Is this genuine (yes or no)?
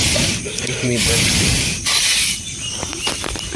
yes